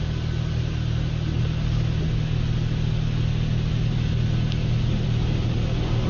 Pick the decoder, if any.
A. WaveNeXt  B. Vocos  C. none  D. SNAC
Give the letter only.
C